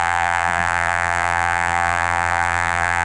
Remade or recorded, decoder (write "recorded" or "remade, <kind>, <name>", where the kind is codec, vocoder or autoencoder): remade, vocoder, BigVGAN v2